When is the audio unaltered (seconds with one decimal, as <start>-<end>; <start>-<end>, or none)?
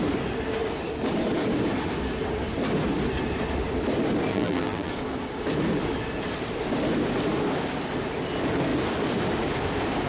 0.0-4.3; 4.9-10.1